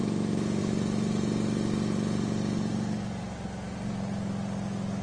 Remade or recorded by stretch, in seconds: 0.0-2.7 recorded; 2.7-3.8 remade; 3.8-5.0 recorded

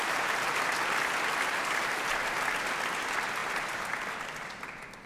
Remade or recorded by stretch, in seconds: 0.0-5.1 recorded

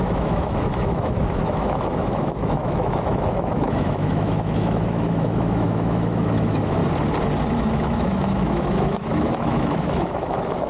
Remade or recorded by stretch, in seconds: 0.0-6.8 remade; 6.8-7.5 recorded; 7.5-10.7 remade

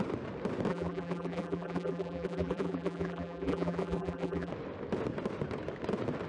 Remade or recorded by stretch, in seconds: 0.0-0.7 recorded; 0.7-4.5 remade; 4.5-6.3 recorded